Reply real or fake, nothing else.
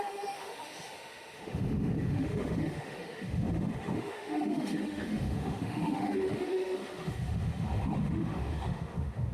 fake